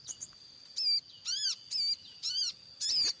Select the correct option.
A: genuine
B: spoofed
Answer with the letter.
A